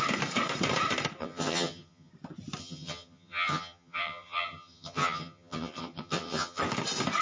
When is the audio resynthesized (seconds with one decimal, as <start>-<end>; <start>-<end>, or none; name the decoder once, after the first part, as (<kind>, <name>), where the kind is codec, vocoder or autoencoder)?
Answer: 1.2-2.1 (vocoder, HiFi-GAN); 2.6-6.6